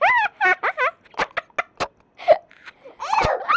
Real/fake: real